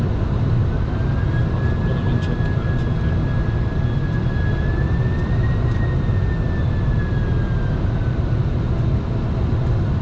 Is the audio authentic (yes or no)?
yes